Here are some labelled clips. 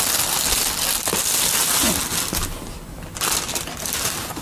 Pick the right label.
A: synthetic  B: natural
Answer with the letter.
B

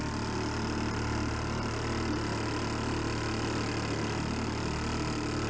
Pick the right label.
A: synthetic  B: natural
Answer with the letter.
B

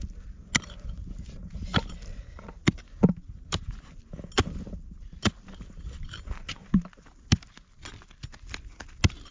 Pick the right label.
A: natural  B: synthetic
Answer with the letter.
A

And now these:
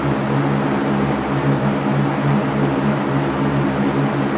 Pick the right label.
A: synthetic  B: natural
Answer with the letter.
B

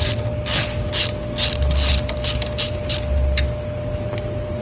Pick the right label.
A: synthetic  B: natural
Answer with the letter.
B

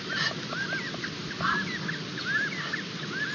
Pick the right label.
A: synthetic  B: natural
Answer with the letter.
B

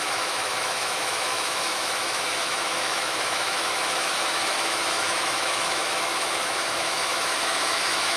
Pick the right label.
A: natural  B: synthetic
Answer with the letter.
B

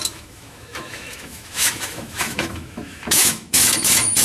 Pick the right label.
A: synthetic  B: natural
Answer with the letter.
A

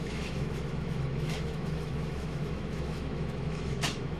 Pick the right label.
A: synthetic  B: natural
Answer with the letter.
A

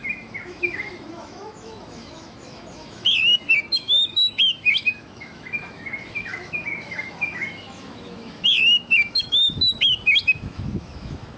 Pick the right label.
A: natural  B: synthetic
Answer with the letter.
B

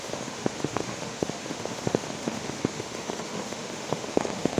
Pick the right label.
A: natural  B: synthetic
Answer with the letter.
B